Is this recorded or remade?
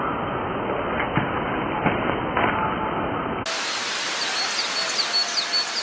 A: recorded